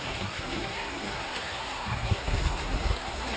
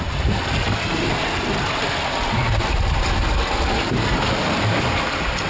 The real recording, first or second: second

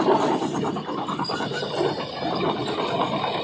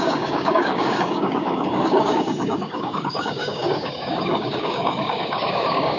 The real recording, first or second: first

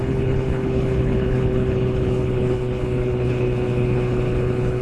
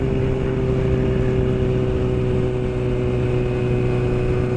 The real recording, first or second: second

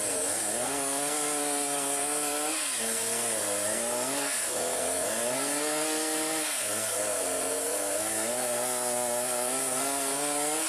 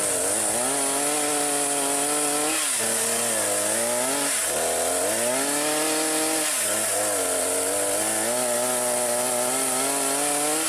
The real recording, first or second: second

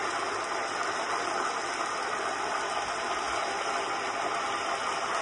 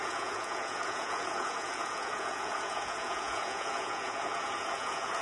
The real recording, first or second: first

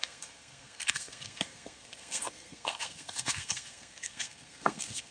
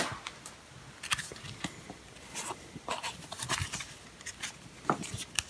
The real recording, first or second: second